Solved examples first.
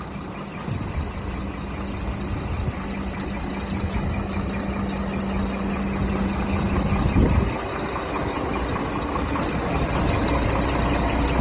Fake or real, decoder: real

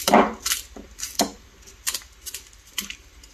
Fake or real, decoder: real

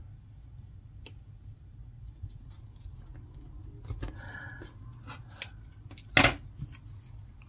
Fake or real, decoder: real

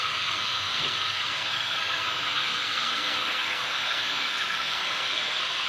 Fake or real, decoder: fake, codec, SNAC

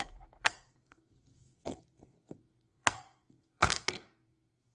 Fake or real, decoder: fake, codec, SNAC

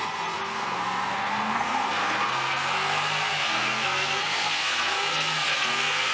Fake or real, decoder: fake, codec, SNAC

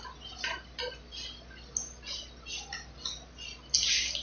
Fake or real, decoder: real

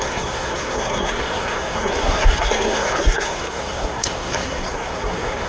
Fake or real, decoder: fake, codec, SNAC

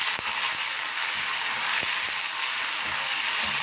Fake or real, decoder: real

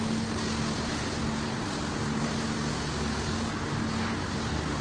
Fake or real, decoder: real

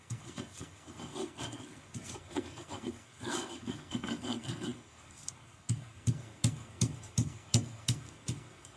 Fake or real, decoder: fake, codec, SNAC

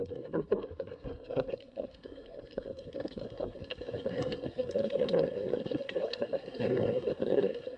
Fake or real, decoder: fake, codec, SNAC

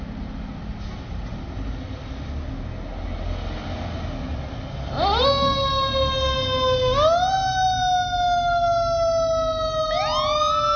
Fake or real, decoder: real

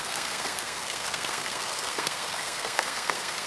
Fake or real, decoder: fake, codec, SNAC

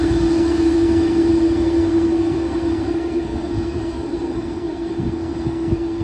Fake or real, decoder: fake, codec, SNAC